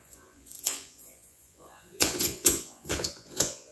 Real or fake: fake